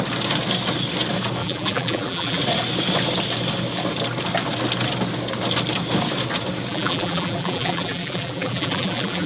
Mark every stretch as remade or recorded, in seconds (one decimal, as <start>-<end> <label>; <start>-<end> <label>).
0.0-1.4 recorded; 1.4-2.4 remade; 2.4-6.7 recorded; 6.7-9.3 remade